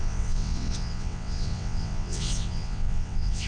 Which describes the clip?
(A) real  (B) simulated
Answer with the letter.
B